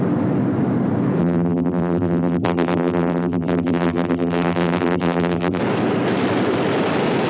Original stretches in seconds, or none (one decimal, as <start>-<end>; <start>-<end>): 0.0-1.2; 5.6-7.3